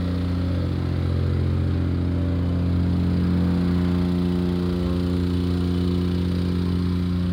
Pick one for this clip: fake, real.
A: real